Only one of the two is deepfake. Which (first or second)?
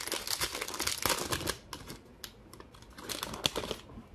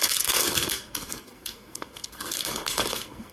second